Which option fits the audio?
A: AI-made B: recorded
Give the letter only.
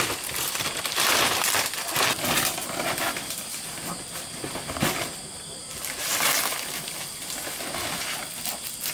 B